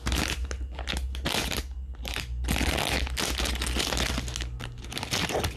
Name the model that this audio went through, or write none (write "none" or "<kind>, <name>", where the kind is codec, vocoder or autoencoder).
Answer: none